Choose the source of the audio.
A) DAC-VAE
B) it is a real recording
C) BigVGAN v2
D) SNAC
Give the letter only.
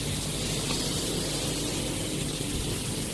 B